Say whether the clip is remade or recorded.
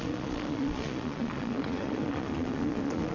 remade